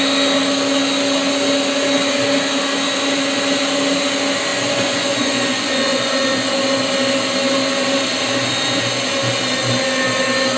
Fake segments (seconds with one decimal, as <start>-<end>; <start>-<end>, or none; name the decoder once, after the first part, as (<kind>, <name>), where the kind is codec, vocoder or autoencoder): 4.5-6.3 (vocoder, Vocos)